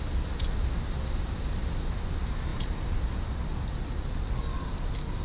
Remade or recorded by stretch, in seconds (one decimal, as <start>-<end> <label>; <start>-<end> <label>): 0.0-2.5 recorded; 2.5-3.1 remade; 3.1-5.2 recorded